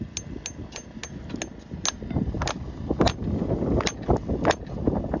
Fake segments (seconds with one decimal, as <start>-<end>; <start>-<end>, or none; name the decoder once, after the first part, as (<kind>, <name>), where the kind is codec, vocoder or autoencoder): none